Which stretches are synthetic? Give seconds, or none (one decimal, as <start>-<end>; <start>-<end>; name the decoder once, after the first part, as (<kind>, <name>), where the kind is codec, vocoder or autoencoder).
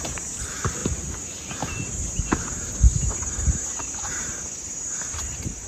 none